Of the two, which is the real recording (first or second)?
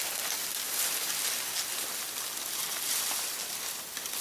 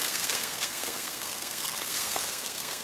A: first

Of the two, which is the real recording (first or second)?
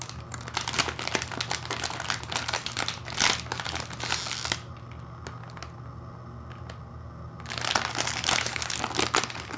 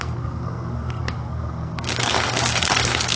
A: first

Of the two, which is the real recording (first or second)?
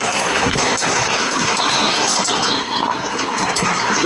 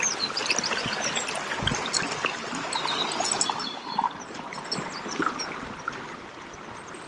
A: second